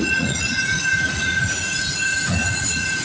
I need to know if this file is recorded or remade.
remade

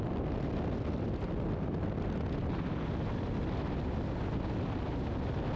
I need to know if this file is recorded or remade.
recorded